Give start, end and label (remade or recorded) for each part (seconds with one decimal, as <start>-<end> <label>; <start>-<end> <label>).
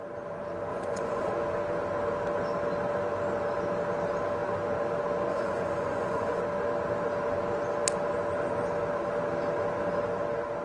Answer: 0.0-0.7 recorded; 0.7-1.3 remade; 1.3-5.3 recorded; 5.3-6.4 remade; 6.4-10.6 recorded